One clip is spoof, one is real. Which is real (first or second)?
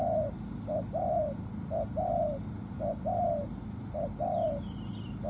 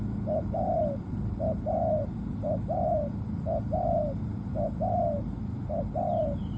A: first